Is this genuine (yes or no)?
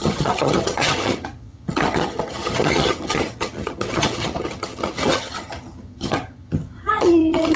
no